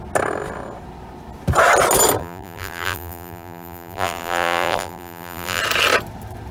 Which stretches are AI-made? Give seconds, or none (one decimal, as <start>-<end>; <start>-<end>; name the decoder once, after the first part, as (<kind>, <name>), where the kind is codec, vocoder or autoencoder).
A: 2.2-5.6 (vocoder, BigVGAN v2)